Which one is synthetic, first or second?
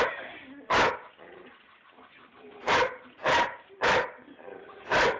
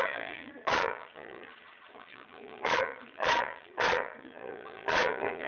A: second